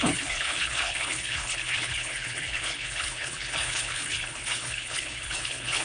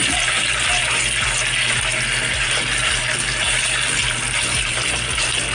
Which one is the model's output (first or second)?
first